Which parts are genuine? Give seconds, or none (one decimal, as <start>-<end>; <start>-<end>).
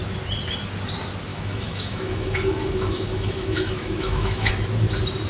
0.0-1.3; 4.5-5.3